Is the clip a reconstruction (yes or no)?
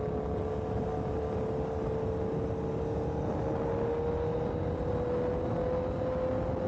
no